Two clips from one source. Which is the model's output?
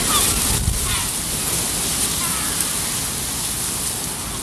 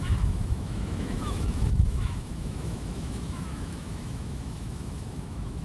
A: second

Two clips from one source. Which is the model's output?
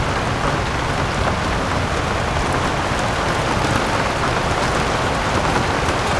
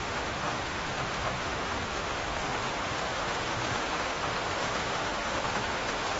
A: second